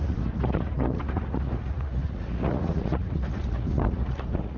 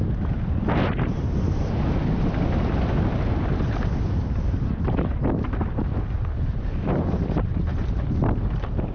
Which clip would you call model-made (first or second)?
first